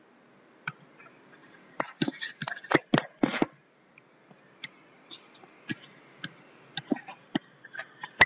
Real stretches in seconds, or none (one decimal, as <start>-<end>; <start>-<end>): 0.0-1.4; 2.5-3.3; 4.0-5.7; 7.6-8.3